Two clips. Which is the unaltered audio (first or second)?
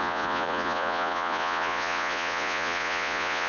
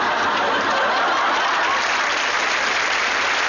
second